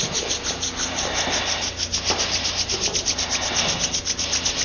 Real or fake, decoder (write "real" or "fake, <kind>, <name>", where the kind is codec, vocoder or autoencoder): real